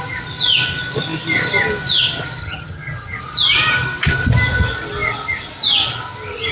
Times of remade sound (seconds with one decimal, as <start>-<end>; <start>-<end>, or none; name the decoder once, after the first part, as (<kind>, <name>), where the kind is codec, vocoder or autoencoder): 2.4-3.2 (vocoder, HiFi-GAN)